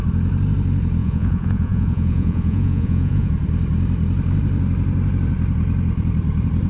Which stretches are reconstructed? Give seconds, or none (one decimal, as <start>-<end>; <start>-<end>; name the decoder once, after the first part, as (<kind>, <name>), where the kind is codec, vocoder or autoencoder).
1.0-3.3 (vocoder, Vocos)